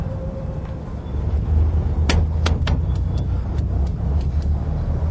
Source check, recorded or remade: recorded